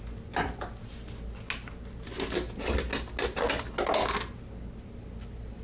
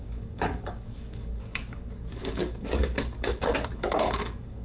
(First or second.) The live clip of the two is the first